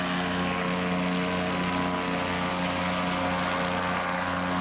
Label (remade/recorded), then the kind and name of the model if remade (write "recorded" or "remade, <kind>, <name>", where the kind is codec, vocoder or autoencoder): recorded